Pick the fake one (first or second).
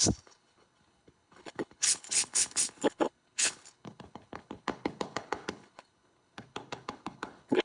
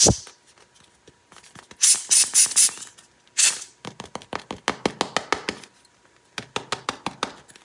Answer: first